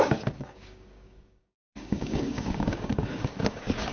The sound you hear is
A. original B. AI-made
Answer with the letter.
B